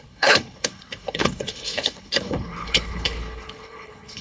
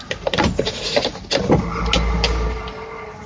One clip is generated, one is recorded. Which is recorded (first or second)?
second